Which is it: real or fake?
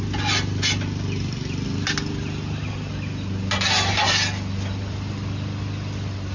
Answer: real